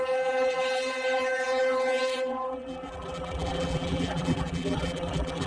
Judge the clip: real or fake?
fake